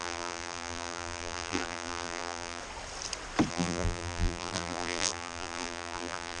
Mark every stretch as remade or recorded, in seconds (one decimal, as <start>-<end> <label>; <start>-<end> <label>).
0.0-2.6 remade; 2.6-3.5 recorded; 3.5-6.4 remade